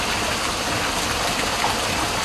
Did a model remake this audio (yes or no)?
no